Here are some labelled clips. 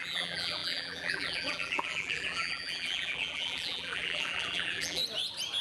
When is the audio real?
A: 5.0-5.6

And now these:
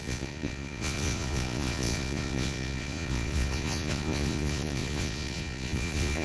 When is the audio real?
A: none

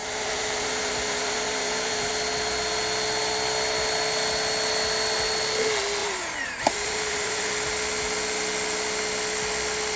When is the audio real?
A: 2.1-6.0; 7.6-10.0

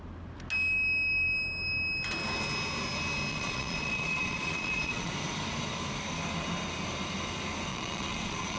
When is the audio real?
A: 0.0-3.3; 5.1-7.7

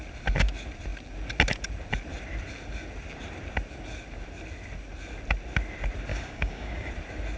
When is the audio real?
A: 0.0-6.1; 6.9-7.4

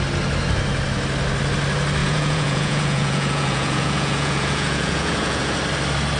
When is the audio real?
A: 0.0-2.0; 5.4-6.2